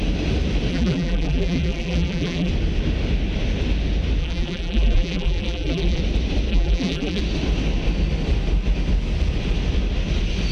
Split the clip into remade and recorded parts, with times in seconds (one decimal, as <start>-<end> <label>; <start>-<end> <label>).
0.0-0.7 recorded; 0.7-2.5 remade; 2.5-4.2 recorded; 4.2-6.0 remade; 6.0-6.5 recorded; 6.5-7.2 remade; 7.2-10.5 recorded